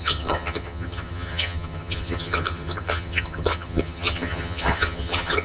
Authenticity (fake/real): fake